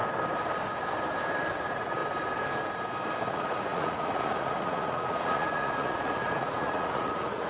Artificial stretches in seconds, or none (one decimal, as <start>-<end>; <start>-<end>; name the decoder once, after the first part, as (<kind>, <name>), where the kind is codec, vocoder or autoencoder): 1.5-2.0 (vocoder, Vocos); 3.3-7.5